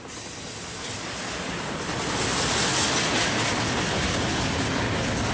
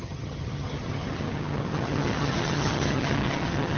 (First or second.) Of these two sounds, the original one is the first